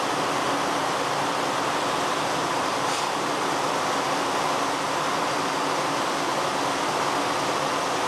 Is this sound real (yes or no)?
yes